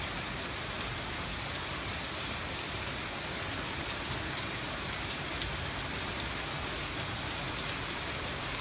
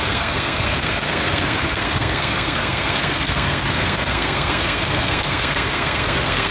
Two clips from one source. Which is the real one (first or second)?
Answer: first